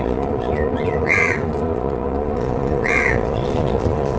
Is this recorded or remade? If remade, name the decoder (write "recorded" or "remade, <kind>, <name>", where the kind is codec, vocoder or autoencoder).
remade, vocoder, Vocos